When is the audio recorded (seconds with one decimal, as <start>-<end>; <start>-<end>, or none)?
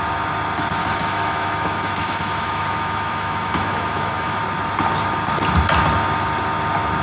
0.0-0.8; 4.4-7.0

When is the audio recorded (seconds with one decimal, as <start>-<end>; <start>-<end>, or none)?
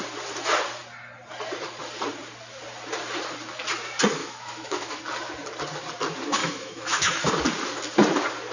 0.0-4.2; 5.0-6.4; 7.3-8.5